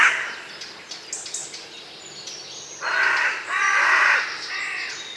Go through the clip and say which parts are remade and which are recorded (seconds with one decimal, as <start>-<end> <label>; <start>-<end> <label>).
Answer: 0.0-5.2 recorded